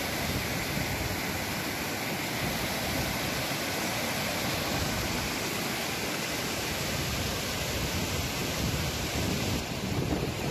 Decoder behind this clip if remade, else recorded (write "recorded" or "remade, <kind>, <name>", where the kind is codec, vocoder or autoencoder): recorded